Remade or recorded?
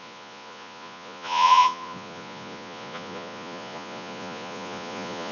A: remade